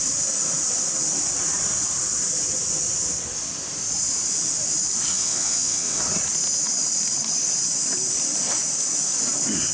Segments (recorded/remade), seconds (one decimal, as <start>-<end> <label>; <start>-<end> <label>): 0.0-5.1 recorded; 5.1-6.0 remade; 6.0-9.7 recorded